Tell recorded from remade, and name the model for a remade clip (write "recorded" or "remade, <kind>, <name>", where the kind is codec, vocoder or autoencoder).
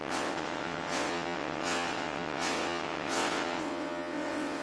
remade, vocoder, WaveNeXt